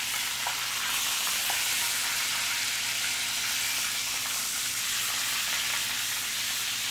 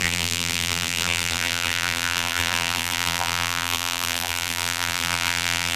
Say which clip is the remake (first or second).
second